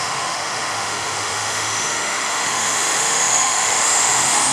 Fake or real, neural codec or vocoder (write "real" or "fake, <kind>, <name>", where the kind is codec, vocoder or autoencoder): fake, autoencoder, DAC-VAE